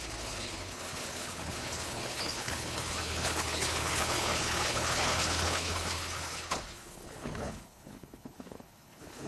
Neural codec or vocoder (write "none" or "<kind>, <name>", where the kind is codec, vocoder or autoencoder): codec, HILCodec